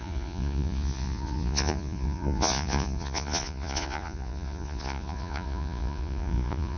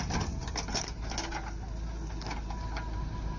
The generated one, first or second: first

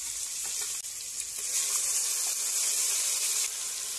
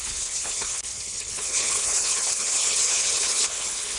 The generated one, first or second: second